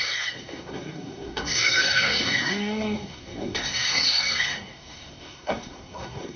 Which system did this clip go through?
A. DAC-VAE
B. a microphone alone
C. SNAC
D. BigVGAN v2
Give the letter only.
C